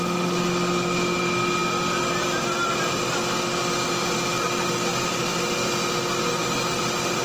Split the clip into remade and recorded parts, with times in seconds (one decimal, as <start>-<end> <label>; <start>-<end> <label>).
0.0-7.2 recorded